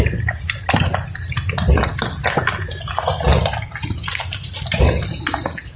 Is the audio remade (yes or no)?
no